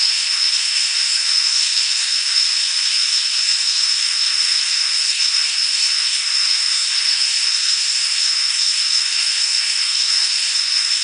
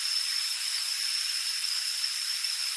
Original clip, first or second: second